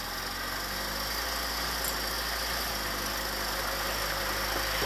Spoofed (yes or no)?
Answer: no